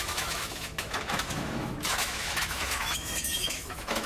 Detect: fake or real fake